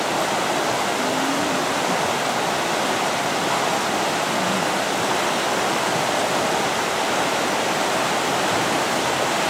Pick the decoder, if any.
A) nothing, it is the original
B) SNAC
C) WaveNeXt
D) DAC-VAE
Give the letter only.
A